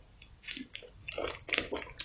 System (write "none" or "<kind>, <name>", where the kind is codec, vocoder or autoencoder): none